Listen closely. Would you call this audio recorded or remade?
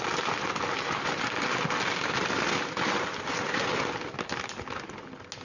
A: recorded